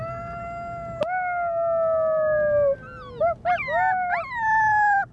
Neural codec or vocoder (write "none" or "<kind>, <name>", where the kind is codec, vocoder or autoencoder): none